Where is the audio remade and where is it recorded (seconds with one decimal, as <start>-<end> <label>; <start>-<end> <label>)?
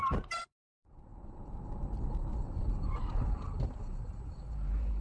0.0-1.1 remade; 1.1-4.1 recorded; 4.1-5.0 remade